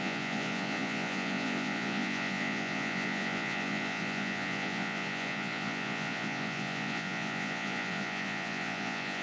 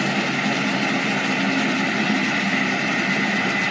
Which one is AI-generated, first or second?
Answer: first